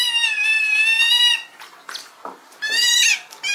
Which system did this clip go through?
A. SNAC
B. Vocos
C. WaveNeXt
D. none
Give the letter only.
D